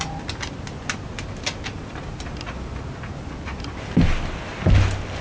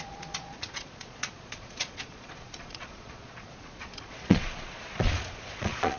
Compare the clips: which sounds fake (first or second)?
second